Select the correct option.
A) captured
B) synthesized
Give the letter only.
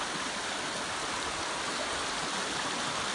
A